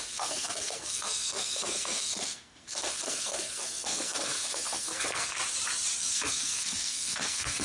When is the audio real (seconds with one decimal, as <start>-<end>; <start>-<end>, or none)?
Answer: 5.4-6.0